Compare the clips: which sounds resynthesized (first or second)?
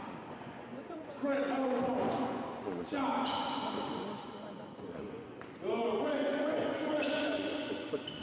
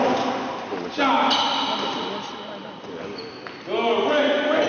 first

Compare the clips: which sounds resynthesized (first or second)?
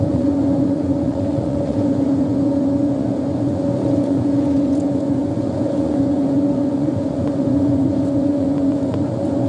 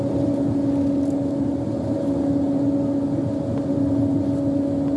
first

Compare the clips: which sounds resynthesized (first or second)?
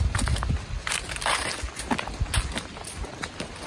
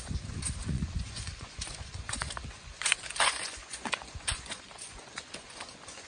second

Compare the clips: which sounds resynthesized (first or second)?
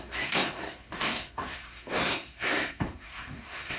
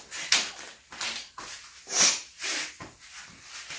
first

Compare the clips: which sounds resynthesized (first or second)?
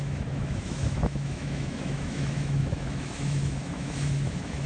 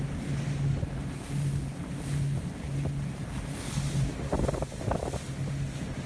first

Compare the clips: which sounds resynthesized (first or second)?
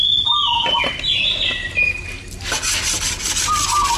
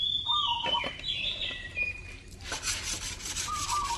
second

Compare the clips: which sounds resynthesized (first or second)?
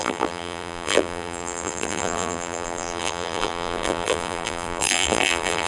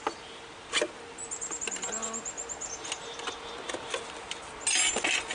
first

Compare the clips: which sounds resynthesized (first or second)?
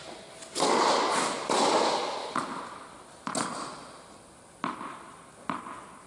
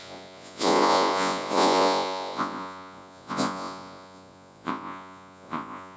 second